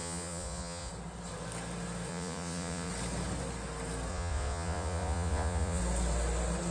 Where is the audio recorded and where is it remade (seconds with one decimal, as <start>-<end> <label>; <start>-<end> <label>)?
0.0-0.9 remade; 0.9-2.1 recorded; 2.1-2.9 remade; 2.9-4.1 recorded; 4.1-5.8 remade; 5.8-6.7 recorded